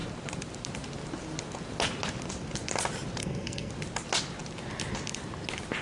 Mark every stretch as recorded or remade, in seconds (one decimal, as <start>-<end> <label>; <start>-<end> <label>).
0.0-3.2 recorded; 3.2-3.7 remade; 3.7-5.8 recorded